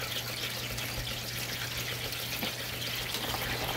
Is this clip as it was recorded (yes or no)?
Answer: yes